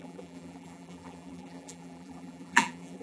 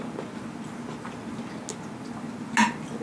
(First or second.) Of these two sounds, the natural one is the second